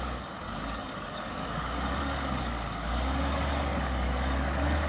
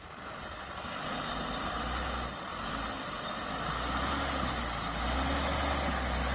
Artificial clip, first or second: first